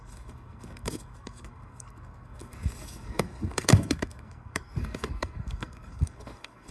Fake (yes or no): yes